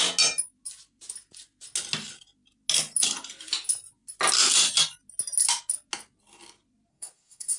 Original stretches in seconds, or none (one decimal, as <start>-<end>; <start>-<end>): 0.0-6.9